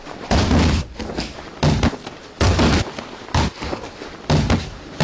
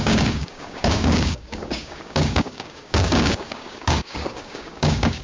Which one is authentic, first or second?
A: first